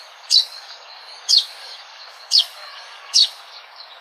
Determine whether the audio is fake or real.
fake